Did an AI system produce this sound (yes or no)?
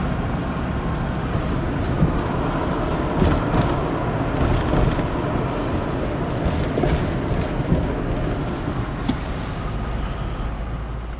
no